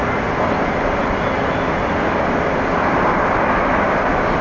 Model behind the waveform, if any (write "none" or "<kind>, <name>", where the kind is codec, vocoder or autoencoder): none